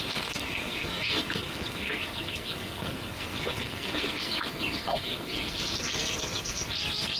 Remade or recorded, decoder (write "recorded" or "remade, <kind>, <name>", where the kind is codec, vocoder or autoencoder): remade, codec, SNAC